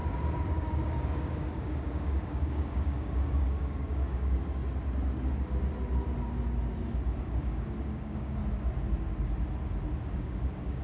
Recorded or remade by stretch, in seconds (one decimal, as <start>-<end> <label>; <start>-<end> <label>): 0.0-0.5 recorded; 0.5-4.6 remade; 4.6-7.2 recorded; 7.2-8.4 remade; 8.4-10.0 recorded; 10.0-10.8 remade